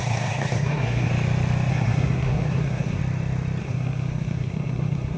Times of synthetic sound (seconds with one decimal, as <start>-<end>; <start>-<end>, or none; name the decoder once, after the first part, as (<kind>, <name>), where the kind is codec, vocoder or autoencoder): 0.0-1.1 (codec, SNAC); 1.7-3.0; 3.6-5.2